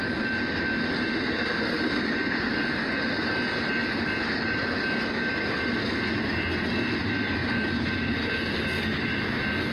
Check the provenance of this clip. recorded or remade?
recorded